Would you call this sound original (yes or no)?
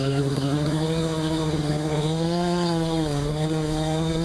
no